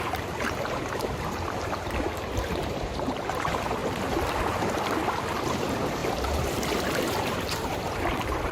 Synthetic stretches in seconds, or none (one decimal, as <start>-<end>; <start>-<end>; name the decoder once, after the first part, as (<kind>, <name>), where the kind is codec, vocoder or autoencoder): 0.0-3.8 (vocoder, BigVGAN v2); 5.2-6.0; 7.0-8.5